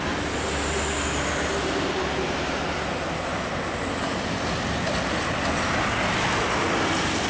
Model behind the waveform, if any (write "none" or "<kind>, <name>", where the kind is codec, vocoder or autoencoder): none